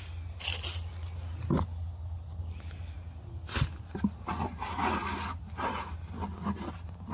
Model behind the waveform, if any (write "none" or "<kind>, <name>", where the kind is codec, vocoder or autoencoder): none